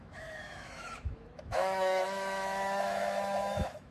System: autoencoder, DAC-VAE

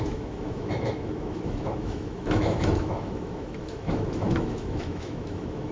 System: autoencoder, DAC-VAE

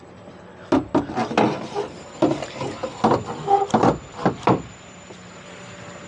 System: none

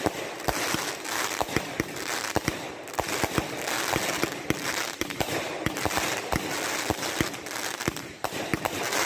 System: none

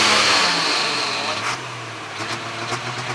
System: none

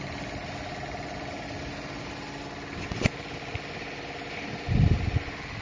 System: none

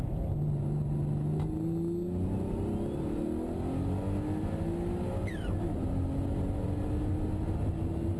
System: none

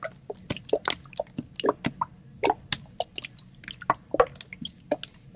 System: none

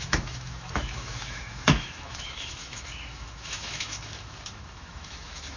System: autoencoder, DAC-VAE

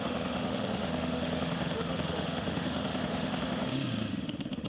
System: autoencoder, DAC-VAE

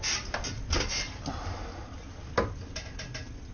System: none